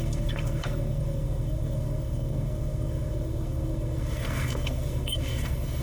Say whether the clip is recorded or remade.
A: remade